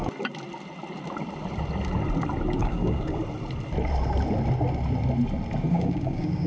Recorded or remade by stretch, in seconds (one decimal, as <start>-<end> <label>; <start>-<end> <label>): 0.0-2.6 recorded; 2.6-3.2 remade; 3.2-5.7 recorded; 5.7-6.5 remade